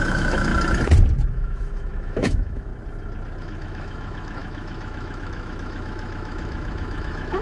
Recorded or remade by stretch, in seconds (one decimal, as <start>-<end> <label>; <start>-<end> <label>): 0.0-0.5 remade; 0.5-1.3 recorded; 1.3-2.7 remade; 2.7-3.4 recorded; 3.4-7.4 remade